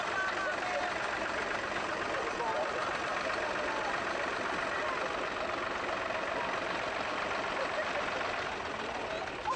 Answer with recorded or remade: recorded